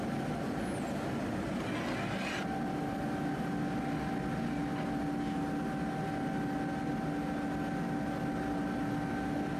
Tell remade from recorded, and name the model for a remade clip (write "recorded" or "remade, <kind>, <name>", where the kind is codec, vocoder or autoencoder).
recorded